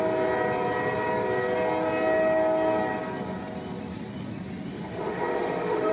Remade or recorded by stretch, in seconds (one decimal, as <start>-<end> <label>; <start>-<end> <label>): 0.0-4.7 recorded; 4.7-5.9 remade